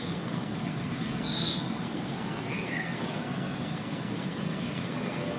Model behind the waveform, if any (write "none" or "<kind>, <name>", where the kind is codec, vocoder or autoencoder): codec, SNAC